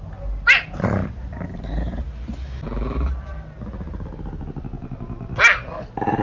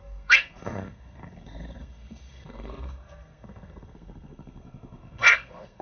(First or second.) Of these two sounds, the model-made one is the second